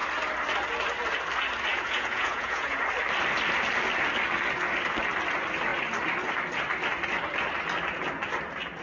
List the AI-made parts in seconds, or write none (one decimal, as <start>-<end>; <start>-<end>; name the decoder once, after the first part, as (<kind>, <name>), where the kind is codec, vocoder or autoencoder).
1.7-2.8 (vocoder, Vocos)